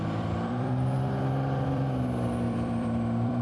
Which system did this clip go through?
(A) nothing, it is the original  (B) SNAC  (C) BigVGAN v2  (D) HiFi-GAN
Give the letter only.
C